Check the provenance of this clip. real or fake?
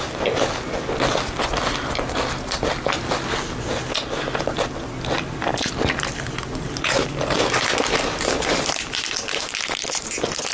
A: real